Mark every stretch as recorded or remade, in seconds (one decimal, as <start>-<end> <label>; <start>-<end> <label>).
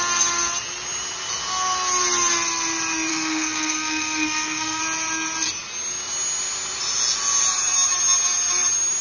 0.0-3.1 recorded; 3.1-4.8 remade; 4.8-9.0 recorded